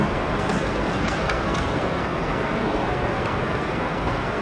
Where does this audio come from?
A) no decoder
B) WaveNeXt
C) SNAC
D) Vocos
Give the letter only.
C